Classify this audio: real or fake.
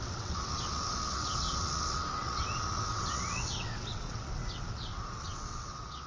fake